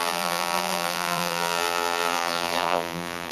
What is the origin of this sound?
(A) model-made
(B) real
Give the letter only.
A